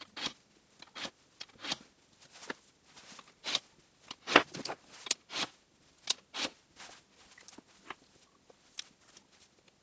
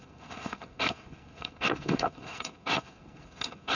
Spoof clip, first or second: second